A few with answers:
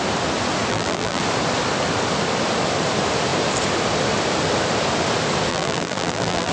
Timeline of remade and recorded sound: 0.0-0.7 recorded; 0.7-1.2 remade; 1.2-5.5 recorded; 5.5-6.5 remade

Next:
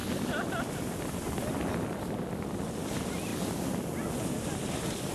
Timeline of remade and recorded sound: 0.0-5.1 recorded

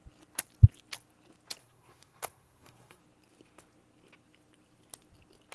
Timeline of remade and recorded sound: 0.0-1.6 recorded; 1.6-3.0 remade; 3.0-5.5 recorded